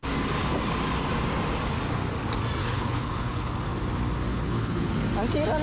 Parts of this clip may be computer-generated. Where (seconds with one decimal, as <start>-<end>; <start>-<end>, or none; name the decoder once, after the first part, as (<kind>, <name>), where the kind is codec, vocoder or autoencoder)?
2.6-3.5 (codec, HILCodec); 4.3-4.9

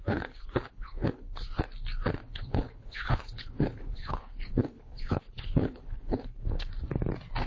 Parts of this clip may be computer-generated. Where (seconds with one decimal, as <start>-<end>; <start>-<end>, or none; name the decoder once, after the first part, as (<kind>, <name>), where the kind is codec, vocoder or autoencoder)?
0.0-1.6 (codec, HILCodec); 2.2-6.7